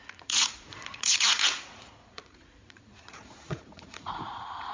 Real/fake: fake